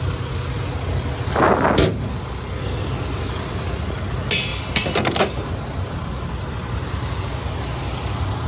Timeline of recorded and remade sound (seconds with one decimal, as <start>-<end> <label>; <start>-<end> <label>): 0.0-4.5 recorded; 4.5-7.2 remade; 7.2-8.5 recorded

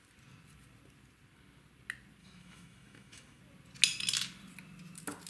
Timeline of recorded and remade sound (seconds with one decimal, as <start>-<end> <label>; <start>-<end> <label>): 0.0-2.2 recorded; 2.2-3.4 remade; 3.4-5.3 recorded

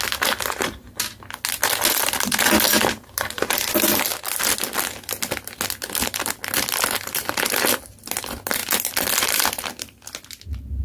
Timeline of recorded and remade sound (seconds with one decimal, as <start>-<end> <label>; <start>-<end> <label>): 0.0-10.8 recorded